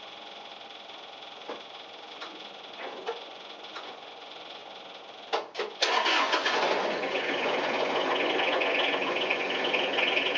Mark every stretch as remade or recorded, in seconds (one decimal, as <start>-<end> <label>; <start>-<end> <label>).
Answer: 0.0-0.5 remade; 0.5-2.1 recorded; 2.1-4.6 remade; 4.6-5.6 recorded; 5.6-10.4 remade